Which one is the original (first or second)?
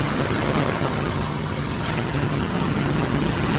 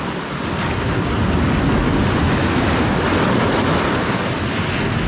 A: second